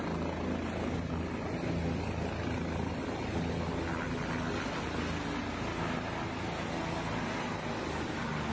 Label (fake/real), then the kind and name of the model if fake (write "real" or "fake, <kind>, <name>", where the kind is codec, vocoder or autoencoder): real